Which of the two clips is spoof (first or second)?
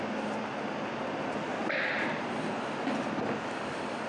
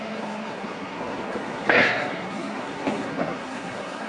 second